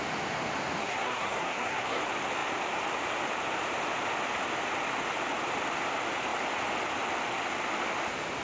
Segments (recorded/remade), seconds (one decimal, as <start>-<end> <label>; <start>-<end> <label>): 0.0-0.8 recorded; 0.8-2.0 remade; 2.0-8.4 recorded